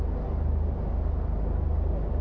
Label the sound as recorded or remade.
recorded